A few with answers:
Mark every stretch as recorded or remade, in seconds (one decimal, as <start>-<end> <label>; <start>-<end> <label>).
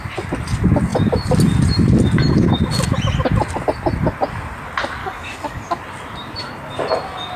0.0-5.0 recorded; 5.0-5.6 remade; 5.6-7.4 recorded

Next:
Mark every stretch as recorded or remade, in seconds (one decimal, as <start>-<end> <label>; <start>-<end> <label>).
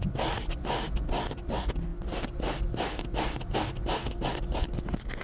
0.0-5.2 recorded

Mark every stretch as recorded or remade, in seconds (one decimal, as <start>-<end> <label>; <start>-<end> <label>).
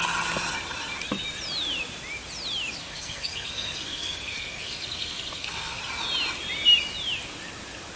0.0-2.8 recorded; 2.8-5.8 remade; 5.8-8.0 recorded